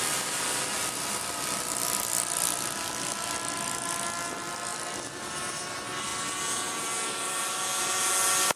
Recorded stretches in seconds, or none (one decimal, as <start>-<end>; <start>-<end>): 0.0-8.6